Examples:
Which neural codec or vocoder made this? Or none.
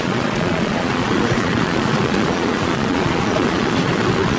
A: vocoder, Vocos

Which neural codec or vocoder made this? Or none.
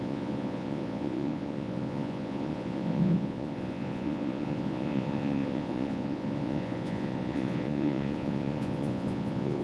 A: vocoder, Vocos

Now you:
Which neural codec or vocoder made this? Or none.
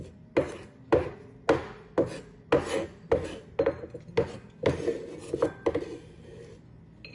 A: none